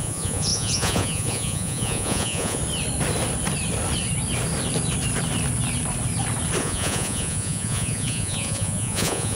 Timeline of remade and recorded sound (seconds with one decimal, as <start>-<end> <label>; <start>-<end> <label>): 0.0-2.6 remade; 2.6-6.6 recorded; 6.6-9.4 remade